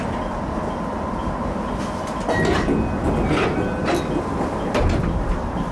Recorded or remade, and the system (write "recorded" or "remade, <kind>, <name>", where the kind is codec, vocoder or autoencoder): recorded